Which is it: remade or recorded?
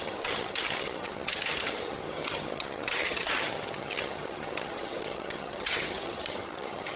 remade